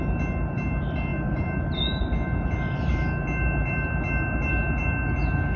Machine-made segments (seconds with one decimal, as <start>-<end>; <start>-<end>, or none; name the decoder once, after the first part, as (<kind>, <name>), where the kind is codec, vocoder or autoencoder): none